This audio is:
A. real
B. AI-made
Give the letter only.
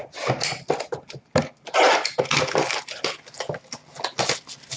A